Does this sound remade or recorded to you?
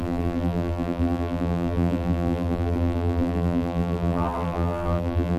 remade